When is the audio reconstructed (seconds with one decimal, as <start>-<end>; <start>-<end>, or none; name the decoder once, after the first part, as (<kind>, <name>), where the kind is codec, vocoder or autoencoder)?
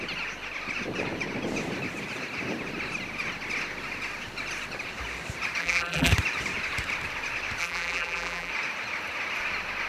5.6-6.1 (vocoder, BigVGAN v2); 7.6-8.5